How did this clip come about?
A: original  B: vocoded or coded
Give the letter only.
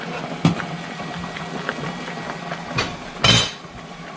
A